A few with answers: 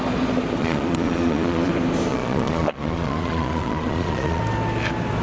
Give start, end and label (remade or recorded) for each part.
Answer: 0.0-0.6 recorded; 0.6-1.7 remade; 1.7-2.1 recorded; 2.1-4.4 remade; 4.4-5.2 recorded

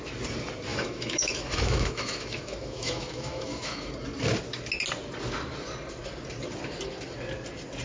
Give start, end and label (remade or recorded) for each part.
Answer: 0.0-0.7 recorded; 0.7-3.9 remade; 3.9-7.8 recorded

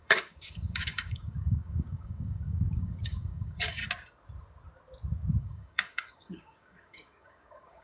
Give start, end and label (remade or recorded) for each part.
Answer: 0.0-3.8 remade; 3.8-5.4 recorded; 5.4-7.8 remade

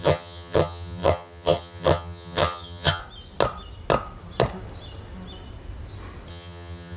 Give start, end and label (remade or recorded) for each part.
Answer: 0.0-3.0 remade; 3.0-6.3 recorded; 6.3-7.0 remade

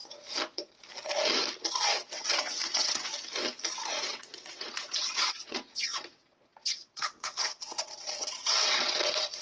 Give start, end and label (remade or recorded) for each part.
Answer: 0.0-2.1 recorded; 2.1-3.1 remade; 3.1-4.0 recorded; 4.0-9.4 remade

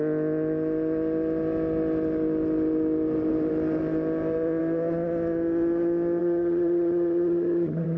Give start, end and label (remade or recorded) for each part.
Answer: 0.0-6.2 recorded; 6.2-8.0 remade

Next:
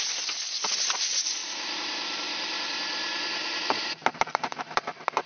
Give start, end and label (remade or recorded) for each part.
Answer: 0.0-1.4 recorded; 1.4-4.6 remade; 4.6-5.3 recorded

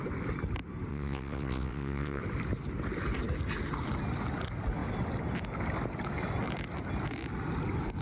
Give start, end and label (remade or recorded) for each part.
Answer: 0.0-0.9 recorded; 0.9-2.2 remade; 2.2-8.0 recorded